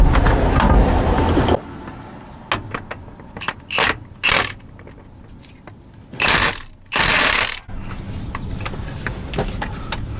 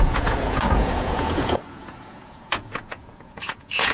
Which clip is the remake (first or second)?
second